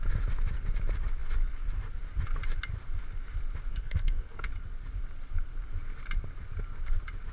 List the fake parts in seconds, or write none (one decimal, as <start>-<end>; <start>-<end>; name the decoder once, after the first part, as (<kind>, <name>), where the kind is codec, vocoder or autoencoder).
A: 3.7-4.5 (codec, SNAC)